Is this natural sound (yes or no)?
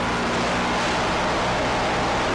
yes